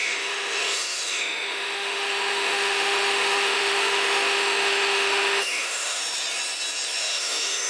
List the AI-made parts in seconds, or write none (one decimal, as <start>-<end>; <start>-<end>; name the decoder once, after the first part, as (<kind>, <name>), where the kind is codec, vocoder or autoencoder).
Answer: 0.0-6.0 (autoencoder, DAC-VAE); 7.0-7.7